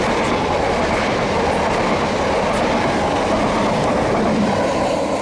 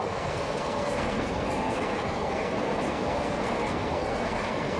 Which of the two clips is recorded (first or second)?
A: first